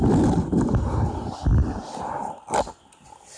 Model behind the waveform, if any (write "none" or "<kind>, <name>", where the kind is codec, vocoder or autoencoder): none